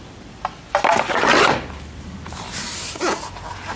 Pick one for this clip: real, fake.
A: real